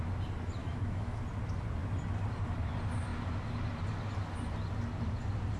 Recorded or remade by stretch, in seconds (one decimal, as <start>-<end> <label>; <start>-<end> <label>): 0.0-0.6 recorded; 0.6-1.2 remade; 1.2-5.6 recorded